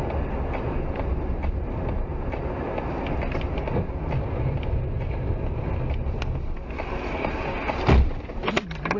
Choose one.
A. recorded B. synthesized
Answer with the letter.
A